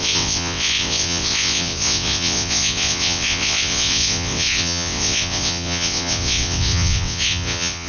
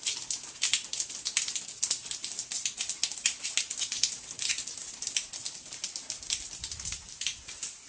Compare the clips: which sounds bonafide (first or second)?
second